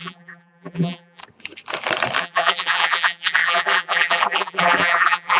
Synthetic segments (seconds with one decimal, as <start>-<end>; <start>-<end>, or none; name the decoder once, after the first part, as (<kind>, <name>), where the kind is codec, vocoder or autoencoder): 0.0-1.2 (vocoder, BigVGAN v2); 2.2-5.4